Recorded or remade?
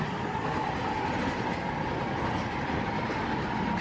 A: recorded